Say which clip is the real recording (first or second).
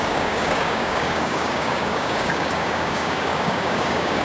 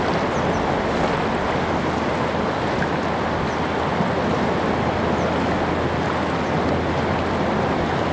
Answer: second